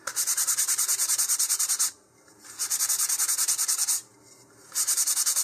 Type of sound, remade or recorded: remade